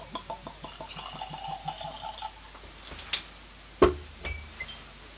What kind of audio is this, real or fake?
real